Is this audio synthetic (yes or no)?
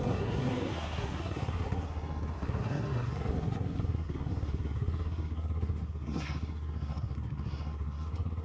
yes